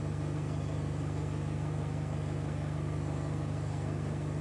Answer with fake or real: fake